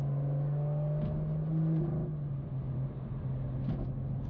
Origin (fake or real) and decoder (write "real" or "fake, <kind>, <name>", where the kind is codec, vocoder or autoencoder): real